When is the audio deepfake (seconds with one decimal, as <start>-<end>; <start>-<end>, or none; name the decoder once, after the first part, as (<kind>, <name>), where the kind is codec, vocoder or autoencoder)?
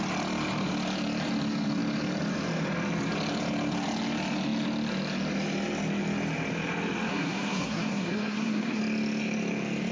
7.1-8.8 (codec, SNAC)